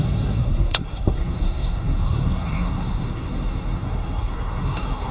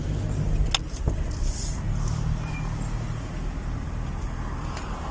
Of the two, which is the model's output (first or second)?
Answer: first